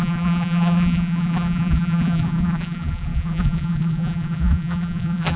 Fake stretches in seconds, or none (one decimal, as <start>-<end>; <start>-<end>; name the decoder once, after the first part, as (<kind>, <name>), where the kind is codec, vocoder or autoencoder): 0.0-5.4 (vocoder, BigVGAN v2)